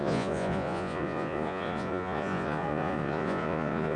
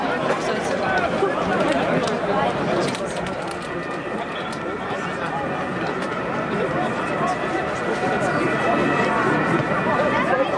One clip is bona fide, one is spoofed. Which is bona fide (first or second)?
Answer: second